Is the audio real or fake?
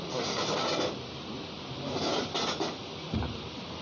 real